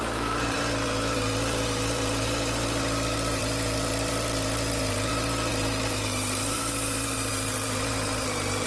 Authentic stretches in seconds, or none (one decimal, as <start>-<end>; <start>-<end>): none